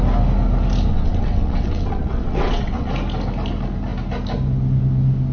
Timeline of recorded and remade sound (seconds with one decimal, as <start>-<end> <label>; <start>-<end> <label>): 0.0-0.9 recorded; 0.9-2.9 remade; 2.9-5.3 recorded